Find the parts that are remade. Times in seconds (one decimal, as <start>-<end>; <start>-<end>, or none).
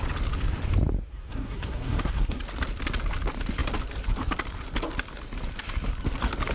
1.1-2.4